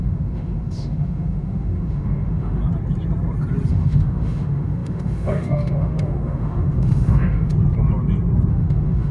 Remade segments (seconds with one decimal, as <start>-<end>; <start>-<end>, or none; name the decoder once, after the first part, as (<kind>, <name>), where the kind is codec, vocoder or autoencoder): 0.0-2.6 (autoencoder, DAC-VAE); 3.7-7.5; 8.5-9.1